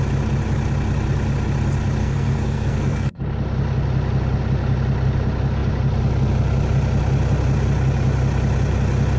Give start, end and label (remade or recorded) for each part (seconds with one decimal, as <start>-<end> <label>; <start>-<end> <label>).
0.0-2.0 recorded; 2.0-3.2 remade; 3.2-9.2 recorded

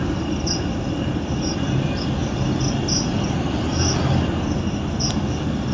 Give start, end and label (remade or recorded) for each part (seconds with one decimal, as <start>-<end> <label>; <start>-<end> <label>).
0.0-5.7 recorded

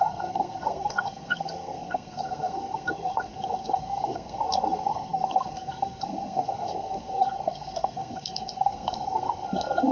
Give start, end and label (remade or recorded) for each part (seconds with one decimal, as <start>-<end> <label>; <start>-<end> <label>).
0.0-9.9 remade

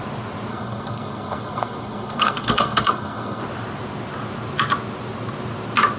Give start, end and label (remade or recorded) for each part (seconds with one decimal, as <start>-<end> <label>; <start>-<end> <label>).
0.0-0.5 recorded; 0.5-3.4 remade; 3.4-6.0 recorded

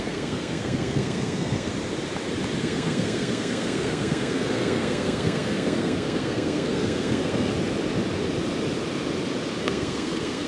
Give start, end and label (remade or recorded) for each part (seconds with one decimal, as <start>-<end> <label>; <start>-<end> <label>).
0.0-1.7 remade; 1.7-2.6 recorded; 2.6-7.5 remade; 7.5-9.6 recorded; 9.6-10.5 remade